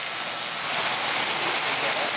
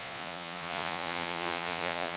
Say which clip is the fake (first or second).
second